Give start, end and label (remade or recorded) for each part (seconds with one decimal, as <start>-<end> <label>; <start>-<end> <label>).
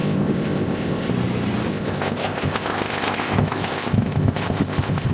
0.0-1.1 remade; 1.1-1.7 recorded; 1.7-5.1 remade